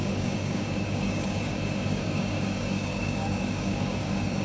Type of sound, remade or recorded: remade